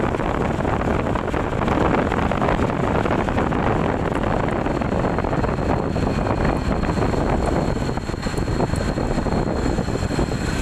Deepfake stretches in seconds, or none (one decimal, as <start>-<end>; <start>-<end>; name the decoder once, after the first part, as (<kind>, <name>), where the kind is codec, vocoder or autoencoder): none